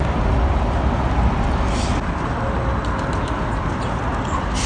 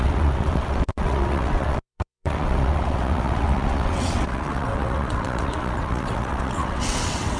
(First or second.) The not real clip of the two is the second